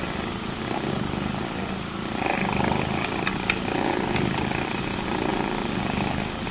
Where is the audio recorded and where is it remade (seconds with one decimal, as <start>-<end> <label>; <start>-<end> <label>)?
0.0-6.5 recorded